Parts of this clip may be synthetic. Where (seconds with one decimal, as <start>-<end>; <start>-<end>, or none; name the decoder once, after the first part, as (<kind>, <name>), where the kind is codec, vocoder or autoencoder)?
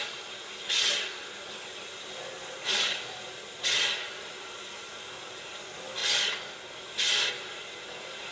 none